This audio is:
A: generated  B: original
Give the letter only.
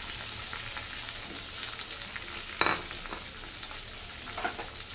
B